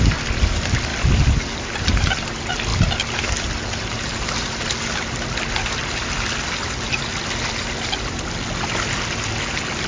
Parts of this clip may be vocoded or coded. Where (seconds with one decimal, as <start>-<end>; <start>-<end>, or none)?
none

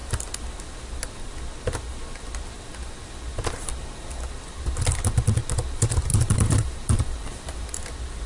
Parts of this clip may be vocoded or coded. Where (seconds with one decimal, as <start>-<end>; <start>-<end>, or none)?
6.1-7.7

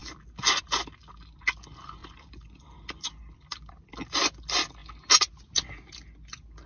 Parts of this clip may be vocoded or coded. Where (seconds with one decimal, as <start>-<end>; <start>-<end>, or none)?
2.0-3.7